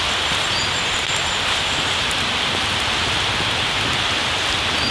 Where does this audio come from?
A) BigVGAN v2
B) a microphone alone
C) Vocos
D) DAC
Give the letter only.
B